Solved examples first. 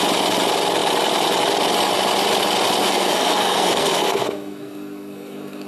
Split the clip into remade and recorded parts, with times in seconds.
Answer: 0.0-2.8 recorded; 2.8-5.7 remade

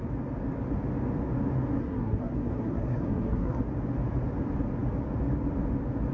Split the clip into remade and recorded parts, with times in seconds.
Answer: 0.0-1.8 recorded; 1.8-3.6 remade; 3.6-6.1 recorded

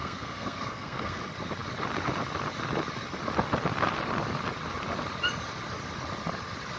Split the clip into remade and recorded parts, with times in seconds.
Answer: 0.0-1.2 remade; 1.2-6.8 recorded

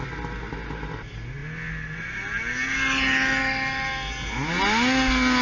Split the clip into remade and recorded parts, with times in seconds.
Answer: 0.0-5.4 recorded

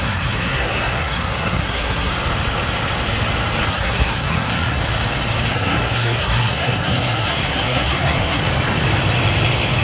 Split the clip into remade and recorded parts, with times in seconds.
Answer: 0.0-2.1 remade; 2.1-3.7 recorded; 3.7-4.8 remade; 4.8-5.5 recorded; 5.5-8.4 remade; 8.4-9.8 recorded